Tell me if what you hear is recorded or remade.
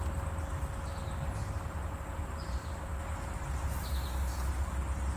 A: recorded